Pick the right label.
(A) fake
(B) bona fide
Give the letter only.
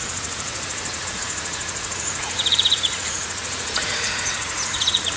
A